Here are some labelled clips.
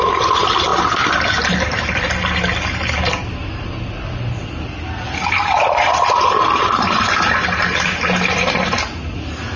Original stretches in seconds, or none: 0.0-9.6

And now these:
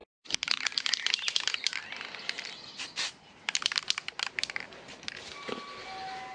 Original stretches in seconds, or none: 0.0-6.3

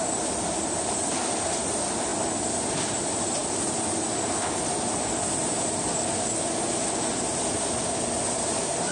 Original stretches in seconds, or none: 2.1-2.8; 3.4-7.1

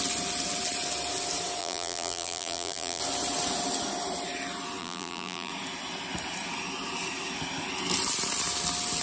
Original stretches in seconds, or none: 0.0-1.6; 3.0-4.8; 5.5-9.0